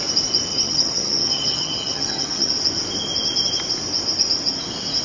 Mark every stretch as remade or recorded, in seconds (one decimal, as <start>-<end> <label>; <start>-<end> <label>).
0.0-0.5 recorded; 0.5-2.5 remade; 2.5-5.0 recorded